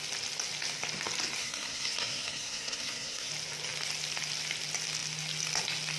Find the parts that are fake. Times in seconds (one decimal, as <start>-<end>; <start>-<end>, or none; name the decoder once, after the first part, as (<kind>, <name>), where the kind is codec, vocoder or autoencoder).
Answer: 1.4-3.3 (codec, SNAC)